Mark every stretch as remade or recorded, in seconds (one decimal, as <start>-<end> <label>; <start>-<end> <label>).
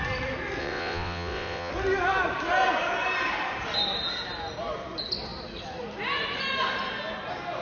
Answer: 0.0-0.6 recorded; 0.6-1.7 remade; 1.7-7.6 recorded